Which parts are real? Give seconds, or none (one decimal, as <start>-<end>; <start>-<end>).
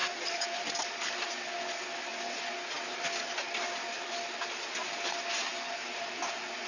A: 0.9-6.7